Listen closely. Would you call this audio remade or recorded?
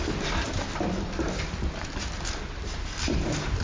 recorded